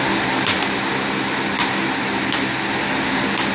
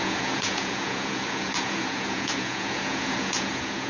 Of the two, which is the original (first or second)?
first